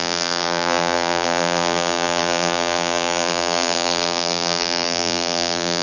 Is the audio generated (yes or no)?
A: yes